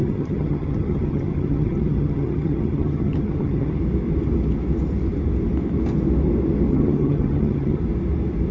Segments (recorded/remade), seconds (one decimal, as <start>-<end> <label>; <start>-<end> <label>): 0.0-3.8 remade; 3.8-6.7 recorded; 6.7-7.8 remade; 7.8-8.5 recorded